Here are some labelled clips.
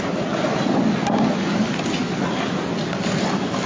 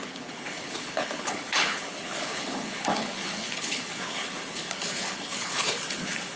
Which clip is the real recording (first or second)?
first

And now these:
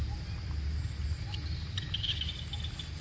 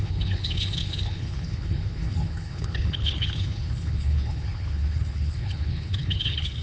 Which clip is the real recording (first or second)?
first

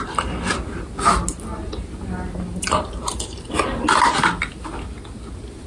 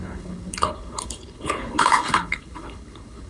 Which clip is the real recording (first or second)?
first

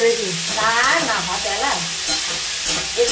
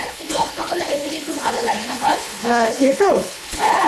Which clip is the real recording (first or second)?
first